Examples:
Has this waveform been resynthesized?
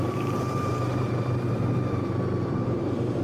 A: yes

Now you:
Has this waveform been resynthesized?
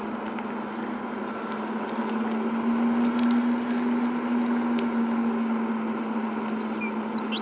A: no